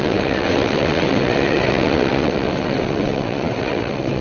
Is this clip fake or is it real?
fake